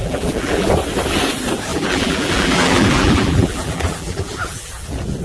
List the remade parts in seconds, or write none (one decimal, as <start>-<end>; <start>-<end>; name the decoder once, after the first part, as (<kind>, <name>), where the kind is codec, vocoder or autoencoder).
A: 0.0-0.7 (vocoder, BigVGAN v2); 1.7-4.8